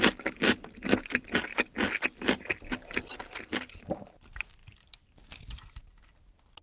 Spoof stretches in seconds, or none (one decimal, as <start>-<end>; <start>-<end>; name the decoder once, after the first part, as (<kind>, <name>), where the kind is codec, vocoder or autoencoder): none